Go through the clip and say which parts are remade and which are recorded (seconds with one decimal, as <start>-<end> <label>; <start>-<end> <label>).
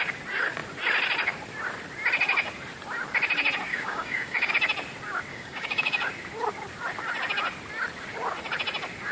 0.0-3.7 recorded; 3.7-4.5 remade; 4.5-5.3 recorded; 5.3-6.1 remade; 6.1-9.1 recorded